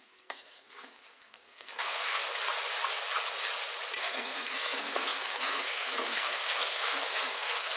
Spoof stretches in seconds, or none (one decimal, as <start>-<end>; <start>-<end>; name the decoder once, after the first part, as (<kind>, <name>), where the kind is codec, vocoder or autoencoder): 0.0-2.3 (codec, SNAC); 4.0-7.8